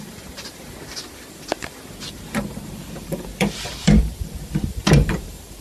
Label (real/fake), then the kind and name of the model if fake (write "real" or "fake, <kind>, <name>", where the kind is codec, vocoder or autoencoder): fake, vocoder, BigVGAN v2